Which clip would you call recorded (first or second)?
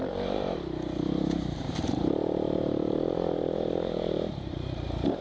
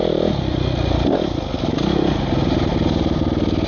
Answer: second